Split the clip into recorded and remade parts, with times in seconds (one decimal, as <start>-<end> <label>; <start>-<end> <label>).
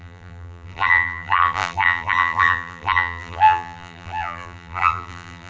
0.0-5.5 remade